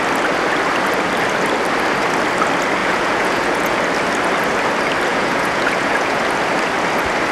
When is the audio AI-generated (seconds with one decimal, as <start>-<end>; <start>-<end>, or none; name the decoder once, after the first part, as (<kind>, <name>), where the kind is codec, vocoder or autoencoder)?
2.8-3.8 (vocoder, Vocos); 5.1-6.2